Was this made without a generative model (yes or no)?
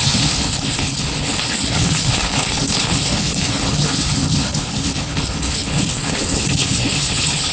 no